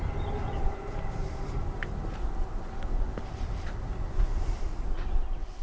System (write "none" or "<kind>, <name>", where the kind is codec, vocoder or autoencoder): none